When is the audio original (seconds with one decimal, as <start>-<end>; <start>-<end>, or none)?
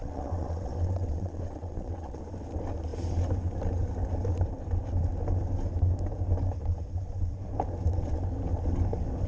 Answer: 2.2-9.3